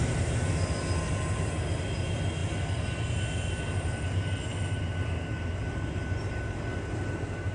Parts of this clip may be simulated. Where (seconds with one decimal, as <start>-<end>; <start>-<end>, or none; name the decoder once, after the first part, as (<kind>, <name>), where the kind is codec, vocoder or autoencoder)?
none